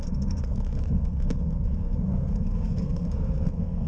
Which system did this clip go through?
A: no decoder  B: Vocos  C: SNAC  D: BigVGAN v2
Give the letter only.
C